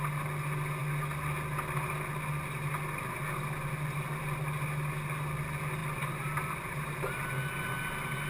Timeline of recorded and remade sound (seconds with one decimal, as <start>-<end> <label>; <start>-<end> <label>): 0.0-5.8 recorded; 5.8-6.7 remade; 6.7-8.3 recorded